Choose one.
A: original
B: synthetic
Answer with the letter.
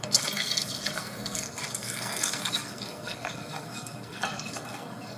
B